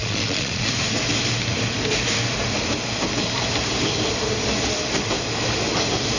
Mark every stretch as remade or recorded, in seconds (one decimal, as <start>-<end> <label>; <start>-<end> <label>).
0.0-0.7 remade; 0.7-6.2 recorded